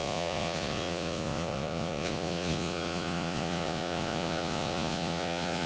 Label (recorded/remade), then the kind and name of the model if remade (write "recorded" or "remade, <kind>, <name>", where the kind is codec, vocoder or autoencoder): remade, vocoder, Vocos